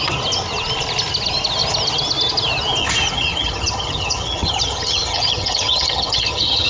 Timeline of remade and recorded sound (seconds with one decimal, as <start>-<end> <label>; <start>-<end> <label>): 0.0-2.8 recorded; 2.8-6.7 remade

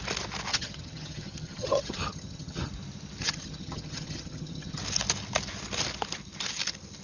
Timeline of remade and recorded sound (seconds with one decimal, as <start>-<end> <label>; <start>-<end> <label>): 0.0-0.5 recorded; 0.5-2.7 remade; 2.7-3.2 recorded; 3.2-4.8 remade; 4.8-7.0 recorded

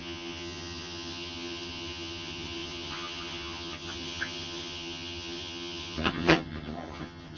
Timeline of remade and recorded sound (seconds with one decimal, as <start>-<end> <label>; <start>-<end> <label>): 0.0-7.4 remade

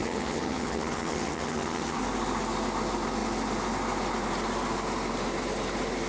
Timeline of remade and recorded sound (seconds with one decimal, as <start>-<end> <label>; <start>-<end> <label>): 0.0-2.0 remade; 2.0-6.1 recorded

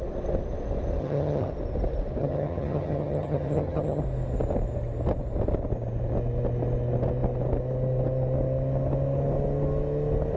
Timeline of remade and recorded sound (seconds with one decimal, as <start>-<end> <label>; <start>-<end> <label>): 0.0-1.0 recorded; 1.0-1.5 remade; 1.5-2.2 recorded; 2.2-4.0 remade; 4.0-10.4 recorded

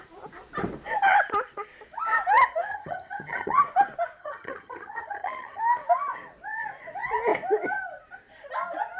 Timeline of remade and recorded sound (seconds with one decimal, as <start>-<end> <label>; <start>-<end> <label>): 0.0-2.7 recorded; 2.7-3.6 remade; 3.6-4.2 recorded; 4.2-5.6 remade; 5.6-9.0 recorded

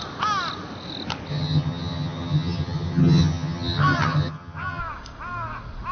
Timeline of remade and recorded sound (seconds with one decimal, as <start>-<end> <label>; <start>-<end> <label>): 0.0-1.3 recorded; 1.3-4.8 remade; 4.8-5.9 recorded